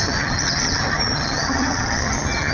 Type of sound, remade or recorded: remade